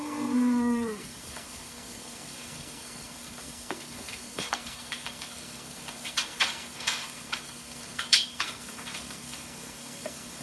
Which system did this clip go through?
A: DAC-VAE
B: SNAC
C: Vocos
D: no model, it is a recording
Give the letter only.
B